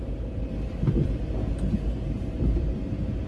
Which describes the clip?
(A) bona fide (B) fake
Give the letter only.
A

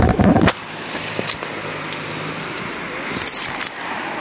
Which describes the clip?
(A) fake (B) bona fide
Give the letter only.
B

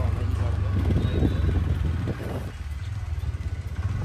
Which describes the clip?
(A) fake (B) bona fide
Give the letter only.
B